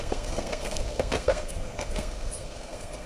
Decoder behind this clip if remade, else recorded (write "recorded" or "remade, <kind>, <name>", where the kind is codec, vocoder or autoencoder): remade, codec, SNAC